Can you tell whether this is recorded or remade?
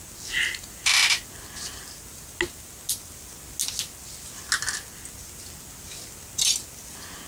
recorded